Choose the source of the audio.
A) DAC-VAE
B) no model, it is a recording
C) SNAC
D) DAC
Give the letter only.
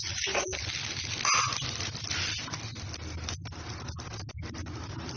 B